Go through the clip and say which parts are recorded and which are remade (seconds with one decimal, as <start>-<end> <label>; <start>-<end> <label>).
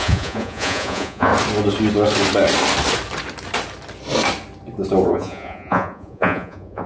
0.0-1.3 remade; 1.3-5.1 recorded; 5.1-6.9 remade